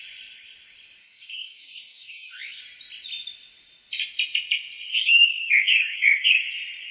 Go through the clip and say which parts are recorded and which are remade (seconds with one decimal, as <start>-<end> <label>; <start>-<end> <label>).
0.0-1.0 recorded; 1.0-2.6 remade; 2.6-4.9 recorded; 4.9-6.4 remade; 6.4-6.9 recorded